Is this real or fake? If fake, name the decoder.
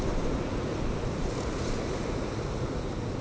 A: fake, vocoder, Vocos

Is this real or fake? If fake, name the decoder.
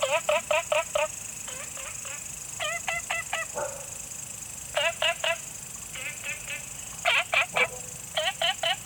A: real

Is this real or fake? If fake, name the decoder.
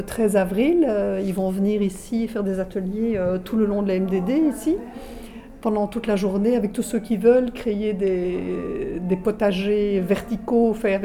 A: real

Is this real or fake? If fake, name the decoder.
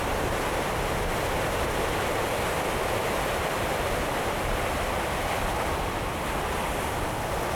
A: real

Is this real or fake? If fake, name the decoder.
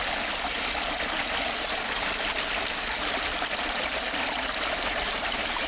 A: real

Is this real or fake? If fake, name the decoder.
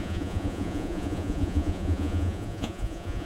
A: fake, vocoder, Vocos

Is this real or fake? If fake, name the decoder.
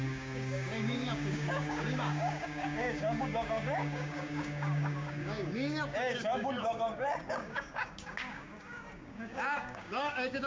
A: fake, codec, DAC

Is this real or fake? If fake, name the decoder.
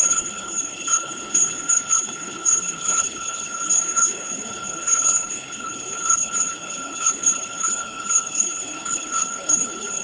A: fake, codec, HILCodec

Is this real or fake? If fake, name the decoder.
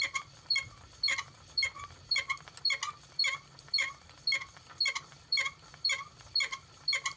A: real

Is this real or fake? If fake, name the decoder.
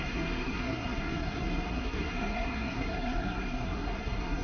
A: fake, codec, SNAC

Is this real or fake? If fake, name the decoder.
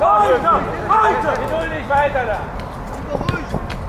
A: real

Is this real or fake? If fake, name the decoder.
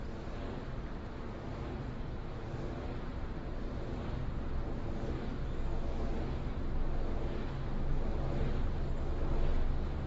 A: real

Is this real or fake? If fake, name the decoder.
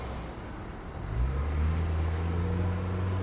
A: real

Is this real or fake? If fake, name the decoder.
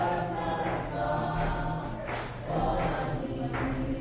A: real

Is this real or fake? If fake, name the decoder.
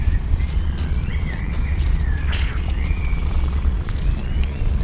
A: fake, vocoder, Vocos